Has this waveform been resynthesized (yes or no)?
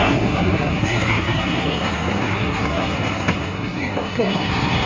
yes